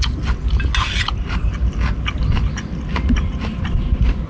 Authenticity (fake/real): real